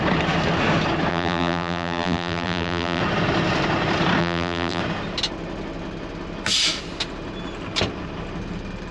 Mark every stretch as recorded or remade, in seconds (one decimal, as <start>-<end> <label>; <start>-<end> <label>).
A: 0.0-1.1 recorded; 1.1-3.0 remade; 3.0-4.2 recorded; 4.2-4.8 remade; 4.8-8.9 recorded